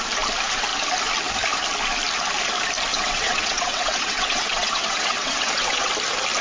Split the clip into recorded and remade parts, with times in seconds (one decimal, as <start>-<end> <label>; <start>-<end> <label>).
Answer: 0.0-2.9 recorded; 2.9-5.9 remade; 5.9-6.4 recorded